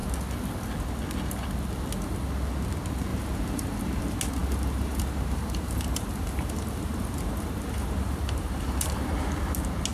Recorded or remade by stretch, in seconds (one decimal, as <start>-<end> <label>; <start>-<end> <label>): 0.0-3.1 recorded; 3.1-4.0 remade; 4.0-4.4 recorded; 4.4-9.1 remade; 9.1-9.9 recorded